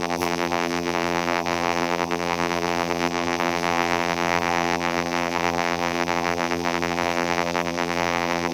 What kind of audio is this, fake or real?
fake